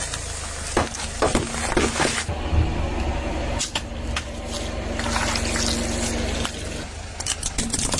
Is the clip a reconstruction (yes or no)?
no